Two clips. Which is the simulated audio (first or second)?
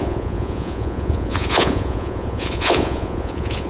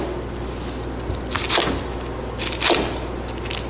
first